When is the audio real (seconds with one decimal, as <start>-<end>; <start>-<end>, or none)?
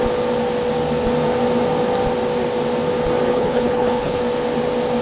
0.0-3.3; 4.2-5.0